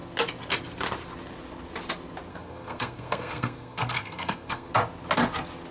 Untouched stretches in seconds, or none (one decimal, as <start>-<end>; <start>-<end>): 0.0-2.3; 4.7-5.7